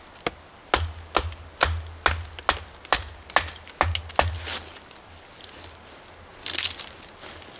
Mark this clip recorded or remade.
recorded